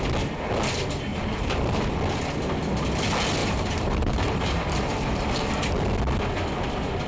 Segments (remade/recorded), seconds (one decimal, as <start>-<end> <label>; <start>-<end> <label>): 0.0-1.1 recorded; 1.1-1.9 remade; 1.9-3.4 recorded; 3.4-5.7 remade; 5.7-7.1 recorded